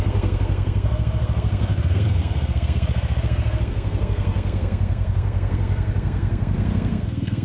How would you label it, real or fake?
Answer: fake